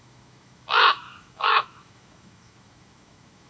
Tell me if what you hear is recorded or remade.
remade